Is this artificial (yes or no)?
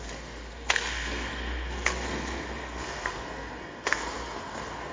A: yes